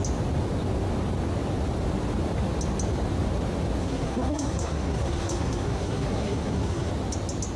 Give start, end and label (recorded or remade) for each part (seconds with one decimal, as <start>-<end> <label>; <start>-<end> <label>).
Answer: 0.0-3.8 recorded; 3.8-6.9 remade; 6.9-7.6 recorded